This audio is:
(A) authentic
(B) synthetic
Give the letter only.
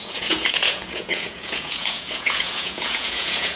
B